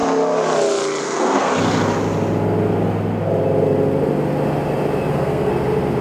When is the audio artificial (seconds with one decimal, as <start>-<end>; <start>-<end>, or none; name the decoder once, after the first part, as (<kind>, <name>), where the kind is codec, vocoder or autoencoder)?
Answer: 1.0-1.5 (codec, SNAC); 5.1-5.5